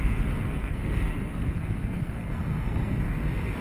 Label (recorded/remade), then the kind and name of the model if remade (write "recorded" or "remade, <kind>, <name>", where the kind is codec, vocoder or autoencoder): remade, codec, SNAC